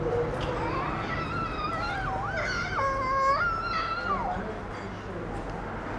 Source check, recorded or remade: recorded